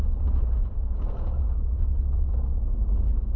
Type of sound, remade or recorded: remade